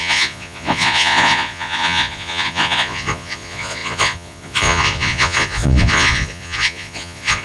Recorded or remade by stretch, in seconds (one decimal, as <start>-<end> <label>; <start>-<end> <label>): 0.0-7.4 remade